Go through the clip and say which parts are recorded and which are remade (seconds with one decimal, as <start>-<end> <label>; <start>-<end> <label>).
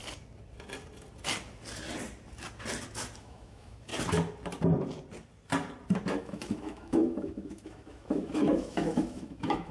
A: 0.0-3.2 recorded; 3.2-3.9 remade; 3.9-6.2 recorded; 6.2-9.7 remade